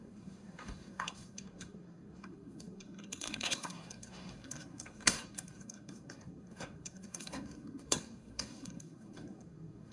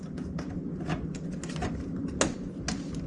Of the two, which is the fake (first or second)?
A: first